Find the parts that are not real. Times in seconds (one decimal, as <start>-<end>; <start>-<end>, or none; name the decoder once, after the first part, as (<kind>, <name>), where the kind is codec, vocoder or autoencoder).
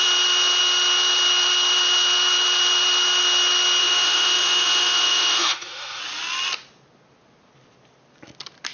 3.8-6.0 (autoencoder, DAC-VAE)